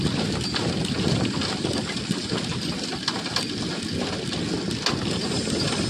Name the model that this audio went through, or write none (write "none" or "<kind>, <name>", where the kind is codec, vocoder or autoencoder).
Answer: none